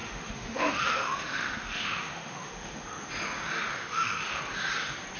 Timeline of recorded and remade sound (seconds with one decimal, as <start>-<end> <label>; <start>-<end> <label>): 0.0-3.1 remade; 3.1-3.7 recorded; 3.7-4.4 remade; 4.4-5.2 recorded